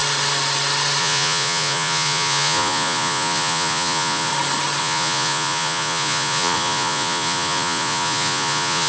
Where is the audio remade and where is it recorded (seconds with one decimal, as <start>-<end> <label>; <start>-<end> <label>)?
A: 0.0-1.0 recorded; 1.0-4.3 remade; 4.3-4.8 recorded; 4.8-8.9 remade